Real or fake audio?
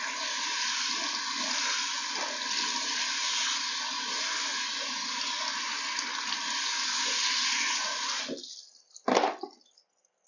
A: real